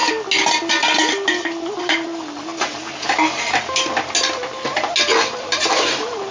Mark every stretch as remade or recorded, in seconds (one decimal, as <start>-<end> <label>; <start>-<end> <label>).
0.0-1.8 recorded; 1.8-2.5 remade; 2.5-5.4 recorded; 5.4-6.3 remade